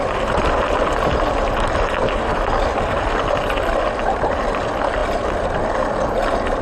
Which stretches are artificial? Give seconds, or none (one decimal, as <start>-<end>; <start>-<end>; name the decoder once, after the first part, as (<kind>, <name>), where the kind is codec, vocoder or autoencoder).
none